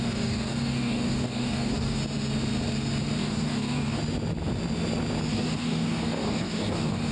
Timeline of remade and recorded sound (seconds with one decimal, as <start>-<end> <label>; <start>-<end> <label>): 0.0-2.0 remade; 2.0-3.2 recorded; 3.2-4.0 remade; 4.0-5.3 recorded; 5.3-7.1 remade

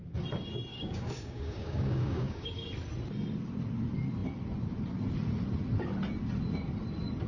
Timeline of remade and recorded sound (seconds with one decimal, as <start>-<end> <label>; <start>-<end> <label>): 0.0-0.7 recorded; 0.7-2.5 remade; 2.5-7.3 recorded

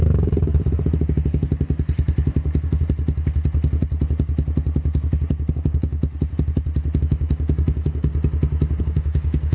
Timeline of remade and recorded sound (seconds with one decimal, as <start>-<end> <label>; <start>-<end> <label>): 0.0-0.5 remade; 0.5-5.5 recorded; 5.5-6.0 remade; 6.0-7.0 recorded; 7.0-8.1 remade; 8.1-8.8 recorded; 8.8-9.5 remade